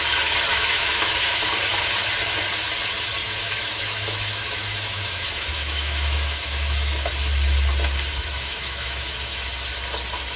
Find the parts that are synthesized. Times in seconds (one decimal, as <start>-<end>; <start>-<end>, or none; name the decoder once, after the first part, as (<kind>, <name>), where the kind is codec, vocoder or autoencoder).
0.5-1.5 (autoencoder, DAC-VAE); 3.2-7.1; 8.1-9.5

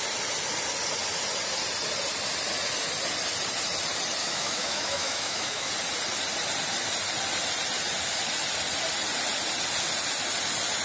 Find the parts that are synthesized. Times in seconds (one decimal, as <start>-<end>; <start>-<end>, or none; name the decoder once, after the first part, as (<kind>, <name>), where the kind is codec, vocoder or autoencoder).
4.2-5.7 (autoencoder, DAC-VAE)

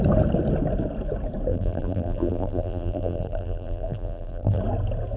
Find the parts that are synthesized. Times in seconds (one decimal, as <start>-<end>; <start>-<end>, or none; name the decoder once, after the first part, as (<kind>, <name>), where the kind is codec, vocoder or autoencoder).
1.5-4.6 (vocoder, BigVGAN v2)